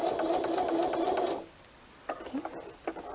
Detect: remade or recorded recorded